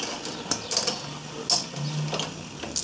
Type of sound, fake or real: real